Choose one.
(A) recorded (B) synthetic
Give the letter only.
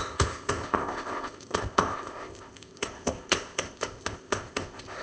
B